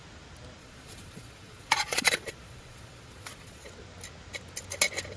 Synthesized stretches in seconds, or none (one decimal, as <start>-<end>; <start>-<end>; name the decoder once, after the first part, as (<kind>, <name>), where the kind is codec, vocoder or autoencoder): 0.6-3.7 (vocoder, Vocos)